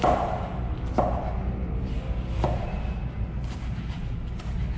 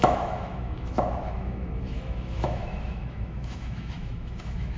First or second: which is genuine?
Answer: first